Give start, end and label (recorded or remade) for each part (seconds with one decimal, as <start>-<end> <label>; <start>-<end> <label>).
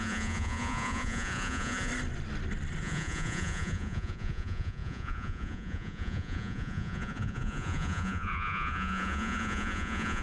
0.0-1.9 remade; 1.9-2.8 recorded; 2.8-10.2 remade